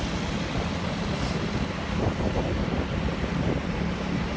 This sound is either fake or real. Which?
real